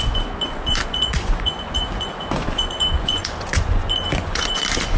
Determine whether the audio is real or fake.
fake